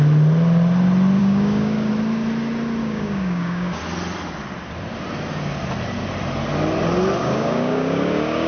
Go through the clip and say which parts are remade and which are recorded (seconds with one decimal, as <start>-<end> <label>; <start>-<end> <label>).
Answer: 0.0-1.2 recorded; 1.2-1.9 remade; 1.9-2.8 recorded; 2.8-3.8 remade; 3.8-7.2 recorded; 7.2-8.5 remade